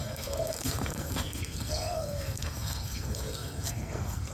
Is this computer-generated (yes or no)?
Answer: yes